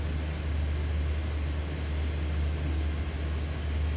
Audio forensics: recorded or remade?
recorded